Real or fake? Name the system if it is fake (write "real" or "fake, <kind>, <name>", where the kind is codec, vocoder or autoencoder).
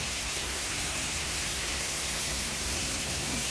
fake, codec, SNAC